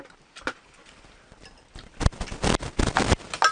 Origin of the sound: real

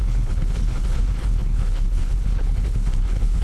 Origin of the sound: fake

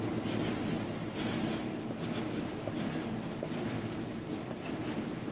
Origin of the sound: real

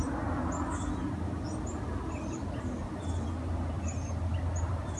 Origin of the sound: real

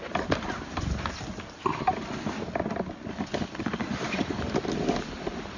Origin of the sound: real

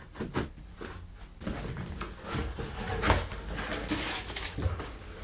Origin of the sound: real